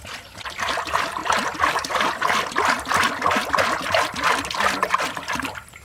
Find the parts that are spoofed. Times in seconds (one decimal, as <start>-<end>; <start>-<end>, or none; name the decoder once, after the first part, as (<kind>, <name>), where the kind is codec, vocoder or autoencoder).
none